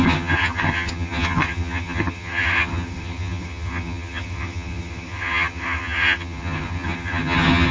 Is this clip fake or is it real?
fake